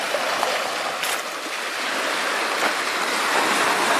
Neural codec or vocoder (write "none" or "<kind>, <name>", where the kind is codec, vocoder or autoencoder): none